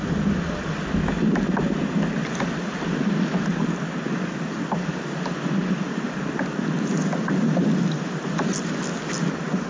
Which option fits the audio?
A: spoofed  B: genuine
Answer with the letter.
B